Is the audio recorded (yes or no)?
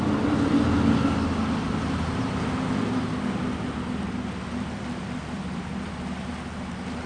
yes